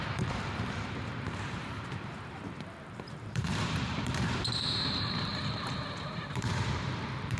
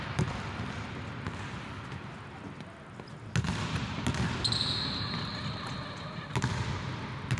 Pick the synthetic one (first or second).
first